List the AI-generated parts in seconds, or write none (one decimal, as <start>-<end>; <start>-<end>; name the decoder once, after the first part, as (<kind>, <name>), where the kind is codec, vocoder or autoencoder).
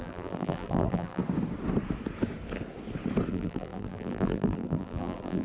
0.0-1.2 (vocoder, BigVGAN v2); 3.3-5.4